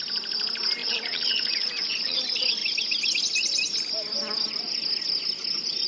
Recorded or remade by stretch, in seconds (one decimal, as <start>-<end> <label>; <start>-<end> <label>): 0.0-0.8 recorded; 0.8-2.2 remade; 2.2-5.9 recorded